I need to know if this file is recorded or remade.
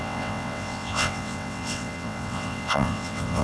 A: remade